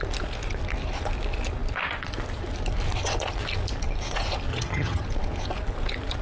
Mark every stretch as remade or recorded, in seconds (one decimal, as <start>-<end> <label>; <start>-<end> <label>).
0.0-4.5 recorded; 4.5-5.0 remade; 5.0-6.2 recorded